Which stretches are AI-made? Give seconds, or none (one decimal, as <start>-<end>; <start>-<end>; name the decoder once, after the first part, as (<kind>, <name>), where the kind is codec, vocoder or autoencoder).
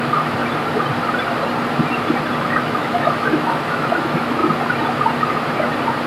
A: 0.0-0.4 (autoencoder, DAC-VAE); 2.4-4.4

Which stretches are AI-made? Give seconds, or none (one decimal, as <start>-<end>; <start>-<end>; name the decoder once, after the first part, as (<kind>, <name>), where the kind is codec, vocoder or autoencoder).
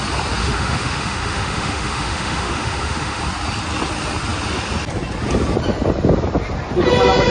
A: 0.4-3.2 (autoencoder, DAC-VAE)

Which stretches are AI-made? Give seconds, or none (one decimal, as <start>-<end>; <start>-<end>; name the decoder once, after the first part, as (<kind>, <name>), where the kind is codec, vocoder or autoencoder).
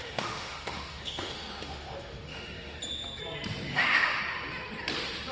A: 0.0-2.8 (autoencoder, DAC-VAE); 3.7-4.2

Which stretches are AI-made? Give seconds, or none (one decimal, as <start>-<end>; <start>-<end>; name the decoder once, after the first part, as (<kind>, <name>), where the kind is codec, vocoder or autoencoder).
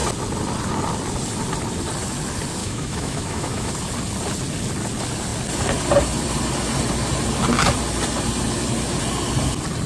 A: 2.6-3.7 (autoencoder, DAC-VAE)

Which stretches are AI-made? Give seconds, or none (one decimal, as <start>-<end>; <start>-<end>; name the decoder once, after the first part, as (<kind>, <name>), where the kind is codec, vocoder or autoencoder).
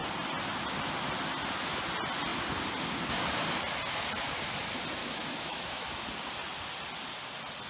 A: 5.0-5.9 (autoencoder, DAC-VAE)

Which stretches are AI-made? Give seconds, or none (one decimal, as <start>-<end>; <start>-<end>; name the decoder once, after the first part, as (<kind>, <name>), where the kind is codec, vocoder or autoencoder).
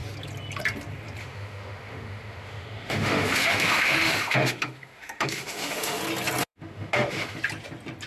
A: 1.2-6.0 (autoencoder, DAC-VAE); 6.4-7.4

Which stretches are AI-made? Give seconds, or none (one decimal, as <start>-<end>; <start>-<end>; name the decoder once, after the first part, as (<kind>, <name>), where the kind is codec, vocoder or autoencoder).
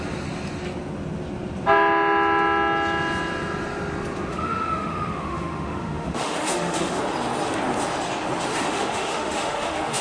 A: 4.3-7.0 (autoencoder, DAC-VAE); 8.5-10.0